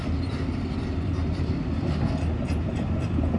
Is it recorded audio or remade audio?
recorded